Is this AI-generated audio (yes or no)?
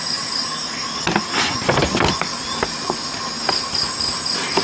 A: no